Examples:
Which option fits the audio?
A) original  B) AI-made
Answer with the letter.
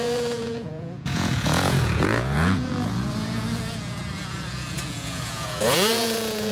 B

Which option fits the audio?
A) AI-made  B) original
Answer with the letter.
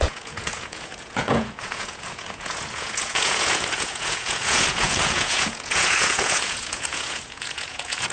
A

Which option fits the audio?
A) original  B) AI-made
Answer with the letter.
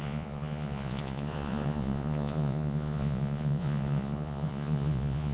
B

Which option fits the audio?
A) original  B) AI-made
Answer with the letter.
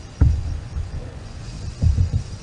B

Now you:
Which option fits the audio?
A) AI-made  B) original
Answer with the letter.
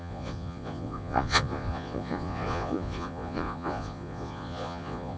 A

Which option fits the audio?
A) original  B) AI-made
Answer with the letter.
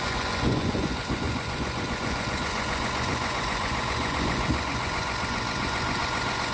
B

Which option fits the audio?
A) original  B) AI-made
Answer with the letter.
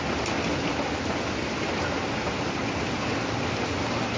A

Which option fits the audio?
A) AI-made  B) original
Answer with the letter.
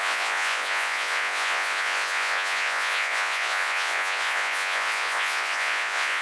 A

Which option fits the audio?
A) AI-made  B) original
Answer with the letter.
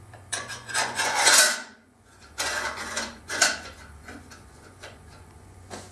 A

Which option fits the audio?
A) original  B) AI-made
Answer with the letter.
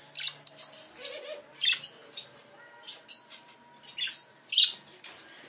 A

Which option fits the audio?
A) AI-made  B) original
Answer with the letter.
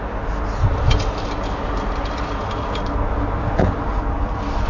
B